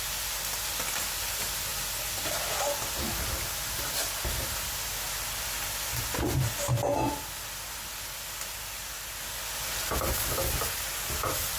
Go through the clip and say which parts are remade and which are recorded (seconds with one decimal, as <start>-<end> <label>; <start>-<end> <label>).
0.0-11.6 recorded